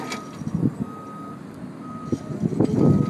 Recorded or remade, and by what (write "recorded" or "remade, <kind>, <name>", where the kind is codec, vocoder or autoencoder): recorded